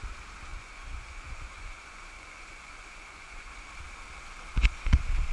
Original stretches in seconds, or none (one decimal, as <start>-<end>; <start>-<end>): 0.0-0.5; 3.7-5.3